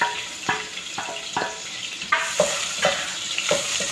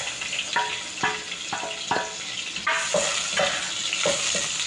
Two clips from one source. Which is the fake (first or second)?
first